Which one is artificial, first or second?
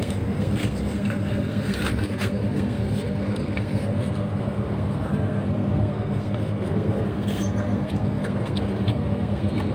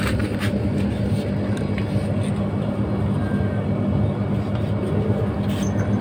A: first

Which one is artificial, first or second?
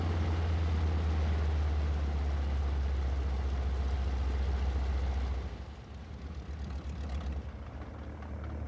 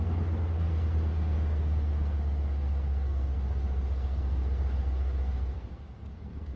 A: second